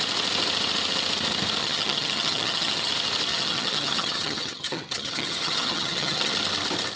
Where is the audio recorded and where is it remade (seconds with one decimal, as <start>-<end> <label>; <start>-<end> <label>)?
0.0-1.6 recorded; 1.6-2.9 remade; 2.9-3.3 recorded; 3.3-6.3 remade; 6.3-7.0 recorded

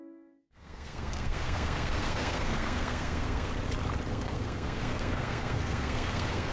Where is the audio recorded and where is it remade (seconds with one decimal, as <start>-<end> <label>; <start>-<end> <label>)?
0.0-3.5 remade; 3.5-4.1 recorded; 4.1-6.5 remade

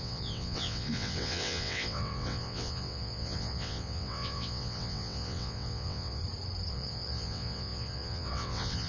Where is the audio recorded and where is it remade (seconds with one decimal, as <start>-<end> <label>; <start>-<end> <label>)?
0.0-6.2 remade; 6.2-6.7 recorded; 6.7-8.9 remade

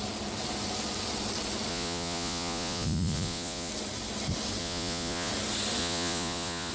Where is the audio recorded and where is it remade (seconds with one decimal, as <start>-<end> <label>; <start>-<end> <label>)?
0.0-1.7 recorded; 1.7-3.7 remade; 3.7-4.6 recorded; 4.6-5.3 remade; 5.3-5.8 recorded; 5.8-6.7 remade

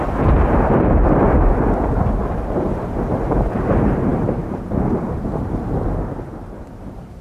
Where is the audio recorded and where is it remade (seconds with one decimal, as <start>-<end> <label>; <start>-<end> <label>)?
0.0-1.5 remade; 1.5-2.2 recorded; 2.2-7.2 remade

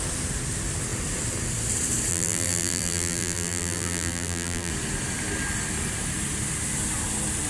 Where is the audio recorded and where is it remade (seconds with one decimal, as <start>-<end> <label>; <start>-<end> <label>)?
0.0-2.1 recorded; 2.1-4.7 remade; 4.7-7.5 recorded

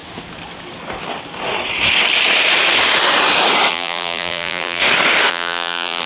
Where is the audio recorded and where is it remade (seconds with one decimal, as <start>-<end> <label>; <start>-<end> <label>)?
0.0-3.7 recorded; 3.7-4.8 remade; 4.8-5.3 recorded; 5.3-6.1 remade